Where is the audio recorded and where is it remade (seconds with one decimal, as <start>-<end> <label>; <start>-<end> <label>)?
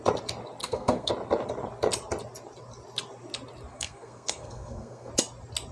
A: 0.0-0.6 recorded; 0.6-1.1 remade; 1.1-3.7 recorded; 3.7-5.1 remade; 5.1-5.7 recorded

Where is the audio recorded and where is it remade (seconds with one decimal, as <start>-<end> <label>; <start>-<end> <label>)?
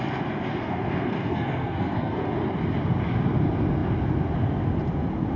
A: 0.0-0.5 recorded; 0.5-2.3 remade; 2.3-5.4 recorded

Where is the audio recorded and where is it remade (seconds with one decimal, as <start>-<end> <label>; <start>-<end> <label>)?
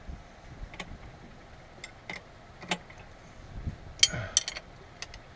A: 0.0-5.4 recorded